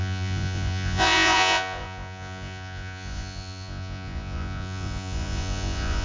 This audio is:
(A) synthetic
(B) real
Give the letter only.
A